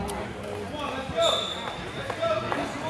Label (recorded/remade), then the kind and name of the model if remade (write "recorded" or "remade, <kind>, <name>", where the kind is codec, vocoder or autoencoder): recorded